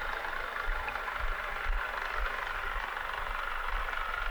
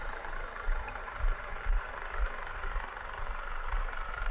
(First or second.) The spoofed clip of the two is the second